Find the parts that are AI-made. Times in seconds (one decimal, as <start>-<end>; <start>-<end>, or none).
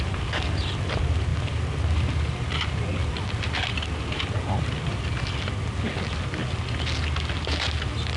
none